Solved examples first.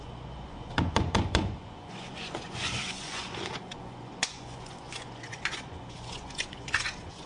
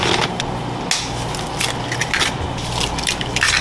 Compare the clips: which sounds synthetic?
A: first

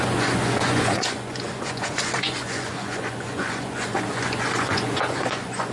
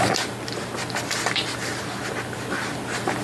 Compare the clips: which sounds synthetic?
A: first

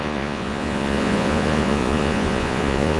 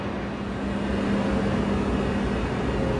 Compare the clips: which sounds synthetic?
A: first